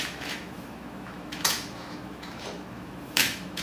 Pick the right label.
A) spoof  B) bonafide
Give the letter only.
A